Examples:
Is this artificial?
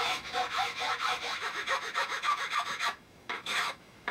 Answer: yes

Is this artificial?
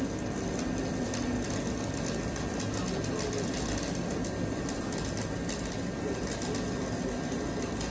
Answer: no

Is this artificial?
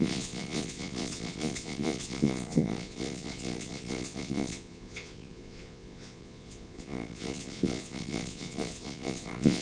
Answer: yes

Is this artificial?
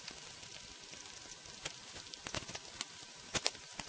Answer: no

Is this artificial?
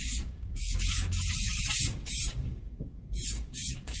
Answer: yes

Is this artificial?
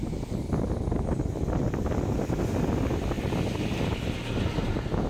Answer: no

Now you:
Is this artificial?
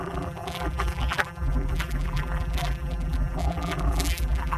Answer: yes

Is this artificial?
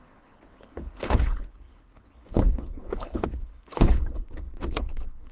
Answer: yes